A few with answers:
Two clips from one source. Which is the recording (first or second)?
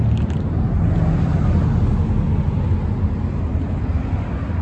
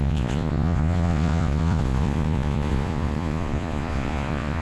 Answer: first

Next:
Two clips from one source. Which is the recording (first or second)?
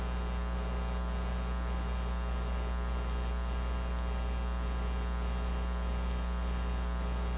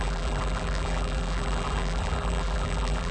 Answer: first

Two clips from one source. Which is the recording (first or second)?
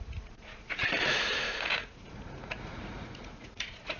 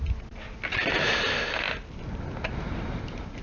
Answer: second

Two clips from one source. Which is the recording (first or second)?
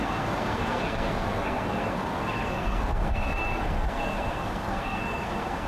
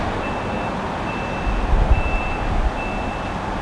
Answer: second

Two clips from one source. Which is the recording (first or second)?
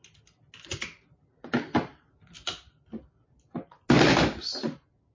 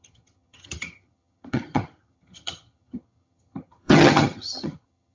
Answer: first